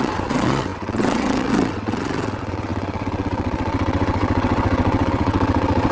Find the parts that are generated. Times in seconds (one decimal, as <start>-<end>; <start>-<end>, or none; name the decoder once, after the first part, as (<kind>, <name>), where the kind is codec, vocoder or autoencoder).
0.0-5.9 (vocoder, WaveNeXt)